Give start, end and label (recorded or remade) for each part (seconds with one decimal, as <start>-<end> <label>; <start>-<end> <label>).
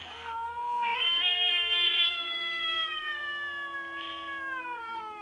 0.0-3.2 remade; 3.2-4.6 recorded; 4.6-5.2 remade